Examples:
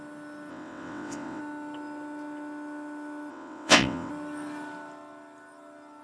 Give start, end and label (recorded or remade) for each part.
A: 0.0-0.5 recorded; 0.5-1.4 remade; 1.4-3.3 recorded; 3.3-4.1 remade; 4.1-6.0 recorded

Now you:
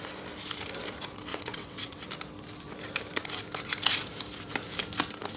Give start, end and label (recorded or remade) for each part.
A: 0.0-1.3 recorded; 1.3-2.1 remade; 2.1-5.4 recorded

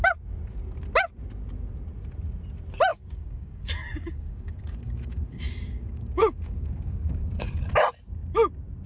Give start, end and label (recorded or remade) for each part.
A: 0.0-2.9 recorded; 2.9-7.6 remade; 7.6-8.9 recorded

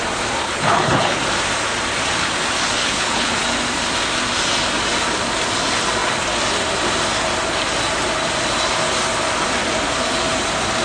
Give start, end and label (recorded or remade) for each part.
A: 0.0-0.4 recorded; 0.4-1.2 remade; 1.2-2.8 recorded; 2.8-3.4 remade; 3.4-10.8 recorded

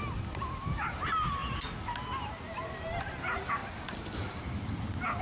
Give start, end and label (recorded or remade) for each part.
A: 0.0-5.2 recorded

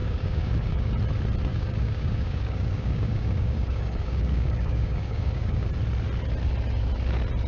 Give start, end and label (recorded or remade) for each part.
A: 0.0-0.9 remade; 0.9-1.5 recorded; 1.5-5.7 remade; 5.7-7.5 recorded

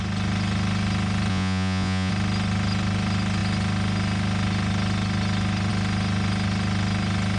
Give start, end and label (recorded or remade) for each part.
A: 0.0-1.3 recorded; 1.3-2.1 remade; 2.1-7.4 recorded